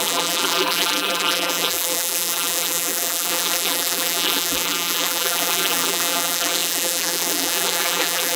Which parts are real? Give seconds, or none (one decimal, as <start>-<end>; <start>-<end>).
none